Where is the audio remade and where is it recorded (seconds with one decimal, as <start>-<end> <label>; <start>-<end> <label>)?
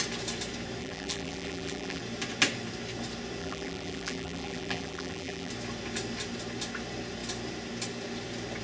0.0-0.8 recorded; 0.8-2.0 remade; 2.0-3.4 recorded; 3.4-5.5 remade; 5.5-8.6 recorded